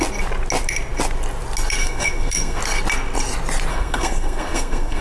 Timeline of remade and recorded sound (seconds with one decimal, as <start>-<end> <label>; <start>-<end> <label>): 0.0-1.8 recorded; 1.8-2.6 remade; 2.6-3.7 recorded; 3.7-5.0 remade